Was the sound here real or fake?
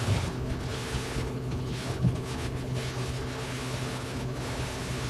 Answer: fake